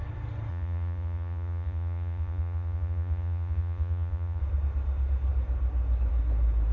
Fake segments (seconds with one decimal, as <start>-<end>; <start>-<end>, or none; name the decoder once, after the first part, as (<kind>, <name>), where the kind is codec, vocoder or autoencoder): 0.5-4.4 (vocoder, Vocos)